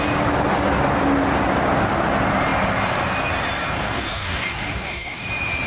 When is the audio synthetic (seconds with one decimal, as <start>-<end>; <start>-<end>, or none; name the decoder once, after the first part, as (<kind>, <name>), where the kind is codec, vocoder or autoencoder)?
3.8-5.2 (codec, DAC)